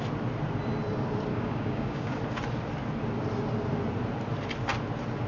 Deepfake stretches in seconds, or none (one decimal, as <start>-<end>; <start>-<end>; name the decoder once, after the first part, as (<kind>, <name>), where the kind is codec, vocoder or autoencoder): 1.3-2.2 (codec, DAC)